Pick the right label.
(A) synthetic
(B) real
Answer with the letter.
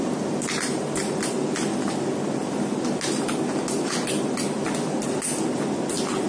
B